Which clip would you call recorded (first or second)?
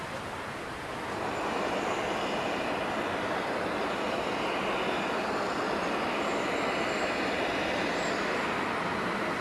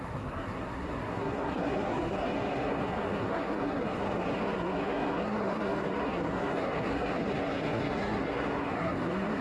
first